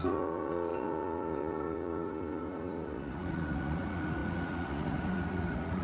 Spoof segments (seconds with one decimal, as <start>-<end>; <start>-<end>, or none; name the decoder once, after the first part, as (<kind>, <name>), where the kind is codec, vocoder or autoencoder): 0.0-5.8 (vocoder, Vocos)